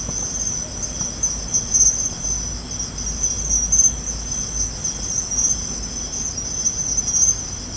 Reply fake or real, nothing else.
real